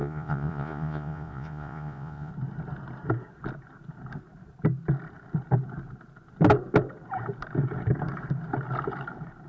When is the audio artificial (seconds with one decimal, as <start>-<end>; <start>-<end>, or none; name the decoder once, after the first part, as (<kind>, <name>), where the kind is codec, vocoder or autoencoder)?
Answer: 0.0-2.3 (vocoder, Vocos)